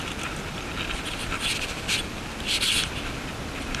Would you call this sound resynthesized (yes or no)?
no